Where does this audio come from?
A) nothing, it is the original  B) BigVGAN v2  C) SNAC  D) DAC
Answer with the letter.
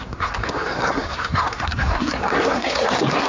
C